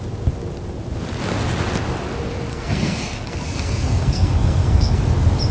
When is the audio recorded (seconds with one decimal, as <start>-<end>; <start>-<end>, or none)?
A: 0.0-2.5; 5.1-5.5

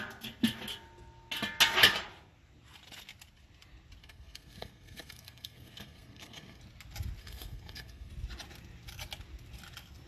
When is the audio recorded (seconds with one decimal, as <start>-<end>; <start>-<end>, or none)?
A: 0.0-4.0; 6.6-7.2; 8.1-10.1

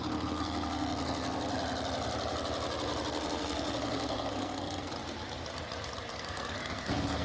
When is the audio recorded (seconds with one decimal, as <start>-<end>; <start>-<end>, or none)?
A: 1.5-3.1; 4.9-6.1

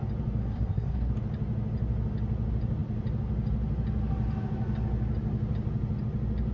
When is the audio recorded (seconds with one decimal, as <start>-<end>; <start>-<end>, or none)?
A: 0.0-0.4; 1.1-6.5